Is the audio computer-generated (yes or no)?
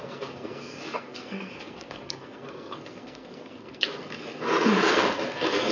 yes